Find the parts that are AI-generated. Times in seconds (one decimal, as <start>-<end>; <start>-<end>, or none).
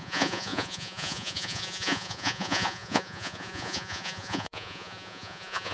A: 0.0-5.7